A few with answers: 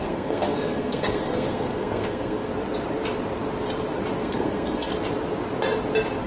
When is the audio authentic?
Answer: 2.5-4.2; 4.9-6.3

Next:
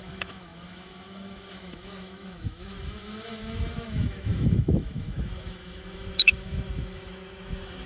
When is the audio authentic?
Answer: none

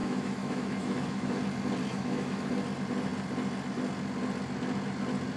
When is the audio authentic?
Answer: 1.4-1.9; 2.5-5.4